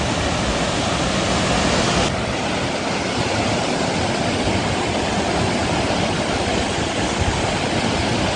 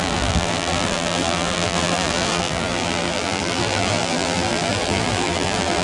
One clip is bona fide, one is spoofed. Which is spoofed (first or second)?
second